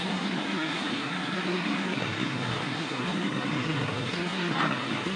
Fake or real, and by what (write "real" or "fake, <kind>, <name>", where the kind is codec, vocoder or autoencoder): fake, codec, SNAC